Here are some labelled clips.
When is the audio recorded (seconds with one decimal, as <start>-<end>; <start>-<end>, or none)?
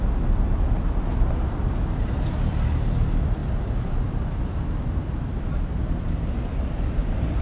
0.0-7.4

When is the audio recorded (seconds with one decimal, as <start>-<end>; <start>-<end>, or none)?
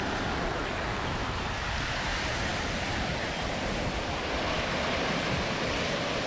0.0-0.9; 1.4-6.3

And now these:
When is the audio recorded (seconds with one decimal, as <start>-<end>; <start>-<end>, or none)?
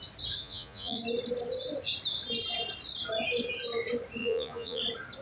0.0-0.4; 1.0-4.2; 4.8-5.2